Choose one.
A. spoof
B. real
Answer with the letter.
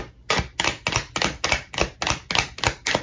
B